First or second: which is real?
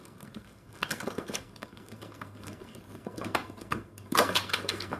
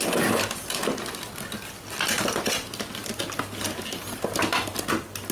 second